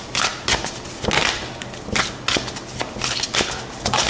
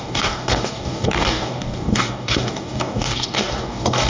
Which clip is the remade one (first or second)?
second